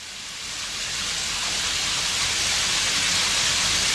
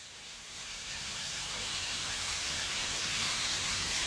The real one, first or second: first